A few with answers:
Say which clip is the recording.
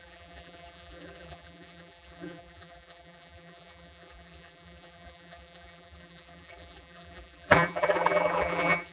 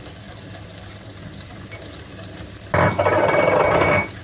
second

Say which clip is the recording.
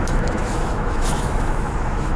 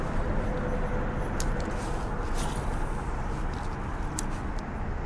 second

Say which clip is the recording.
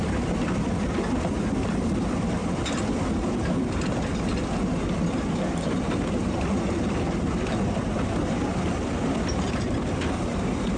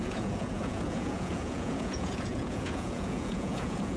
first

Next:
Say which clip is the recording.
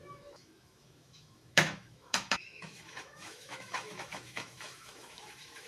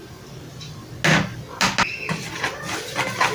second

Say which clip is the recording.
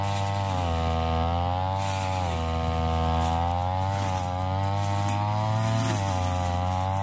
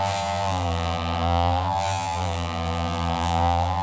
first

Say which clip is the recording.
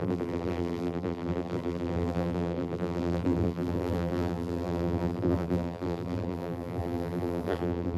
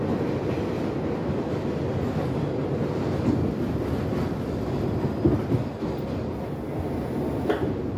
second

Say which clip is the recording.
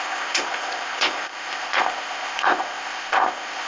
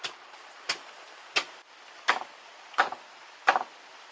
second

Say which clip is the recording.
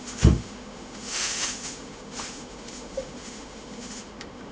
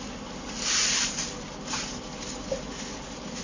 second